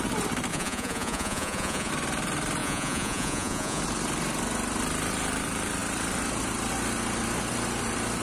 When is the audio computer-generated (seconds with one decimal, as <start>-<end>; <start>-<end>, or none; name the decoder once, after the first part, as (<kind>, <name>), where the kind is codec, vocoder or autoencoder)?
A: 0.5-1.9 (vocoder, Vocos); 2.6-3.8